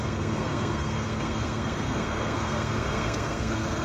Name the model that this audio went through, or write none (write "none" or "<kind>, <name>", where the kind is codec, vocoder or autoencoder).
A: codec, SNAC